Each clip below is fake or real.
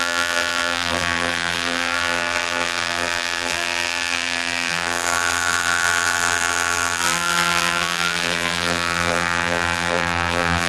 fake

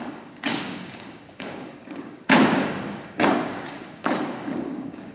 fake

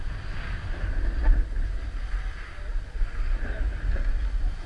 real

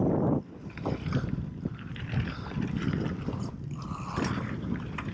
fake